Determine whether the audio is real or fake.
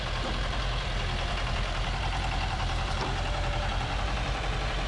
fake